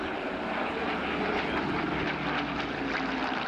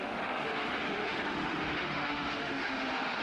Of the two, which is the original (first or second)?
first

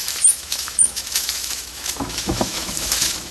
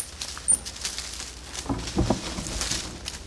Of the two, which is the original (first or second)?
second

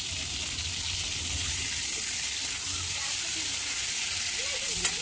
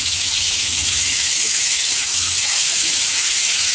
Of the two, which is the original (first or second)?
first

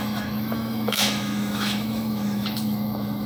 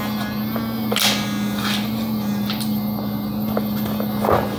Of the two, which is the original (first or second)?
second